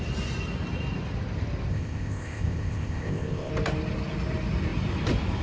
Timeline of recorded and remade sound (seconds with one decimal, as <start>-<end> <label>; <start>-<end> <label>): 0.0-1.7 recorded; 1.7-3.5 remade; 3.5-5.4 recorded